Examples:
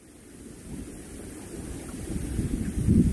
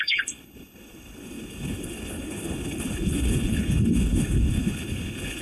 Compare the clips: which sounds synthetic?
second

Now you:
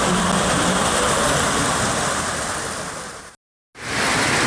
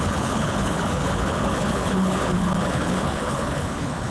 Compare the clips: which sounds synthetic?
second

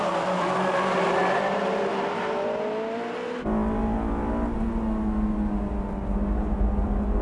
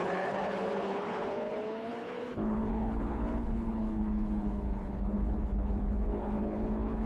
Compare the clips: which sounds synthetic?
second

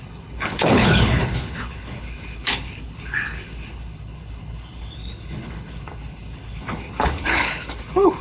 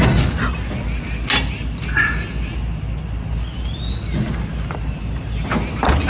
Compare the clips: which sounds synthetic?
first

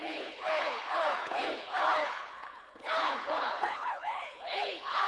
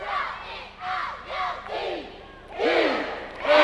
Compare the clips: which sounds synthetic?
first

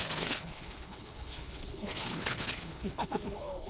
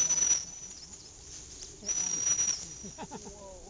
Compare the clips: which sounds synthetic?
first